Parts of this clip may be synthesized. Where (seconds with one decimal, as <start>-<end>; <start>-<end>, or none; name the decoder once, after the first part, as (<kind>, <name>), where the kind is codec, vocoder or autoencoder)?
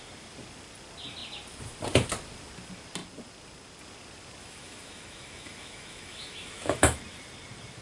4.4-7.0 (autoencoder, DAC-VAE)